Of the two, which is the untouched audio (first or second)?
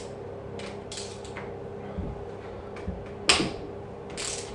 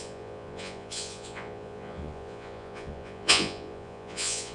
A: first